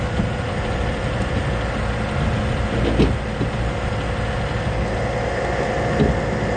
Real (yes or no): yes